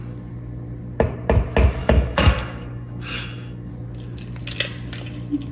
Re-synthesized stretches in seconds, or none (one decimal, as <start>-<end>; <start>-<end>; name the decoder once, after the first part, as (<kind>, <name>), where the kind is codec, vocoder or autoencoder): 1.8-3.7 (codec, DAC)

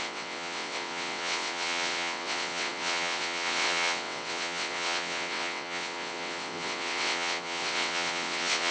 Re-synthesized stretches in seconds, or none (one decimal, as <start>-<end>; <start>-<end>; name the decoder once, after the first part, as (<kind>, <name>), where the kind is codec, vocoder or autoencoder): 0.0-8.7 (vocoder, WaveNeXt)

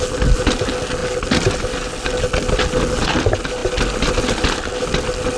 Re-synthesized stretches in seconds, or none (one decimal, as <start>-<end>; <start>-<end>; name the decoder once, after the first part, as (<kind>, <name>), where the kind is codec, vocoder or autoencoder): none

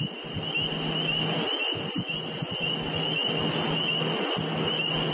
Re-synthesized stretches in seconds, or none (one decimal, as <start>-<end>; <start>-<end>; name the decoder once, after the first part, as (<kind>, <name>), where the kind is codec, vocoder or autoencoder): none